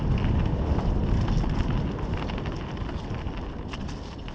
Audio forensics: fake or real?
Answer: real